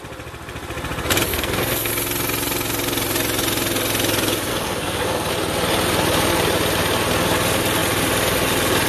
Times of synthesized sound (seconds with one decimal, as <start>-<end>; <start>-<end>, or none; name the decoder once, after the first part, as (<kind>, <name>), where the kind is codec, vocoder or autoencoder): 1.3-1.9 (codec, SNAC); 4.5-5.3